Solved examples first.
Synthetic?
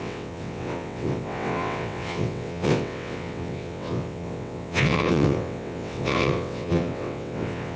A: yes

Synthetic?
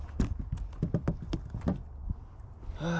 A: no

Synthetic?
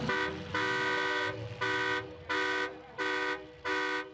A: no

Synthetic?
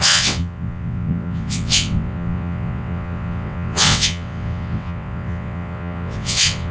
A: yes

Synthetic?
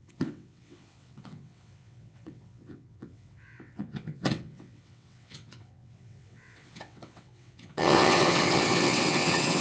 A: yes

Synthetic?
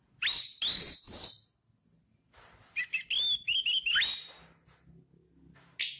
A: no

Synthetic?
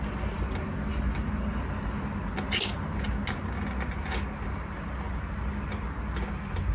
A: no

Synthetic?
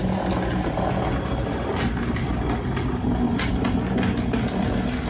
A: no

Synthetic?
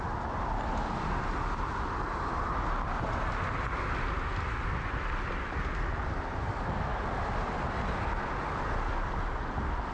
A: no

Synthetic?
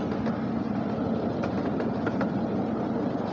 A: no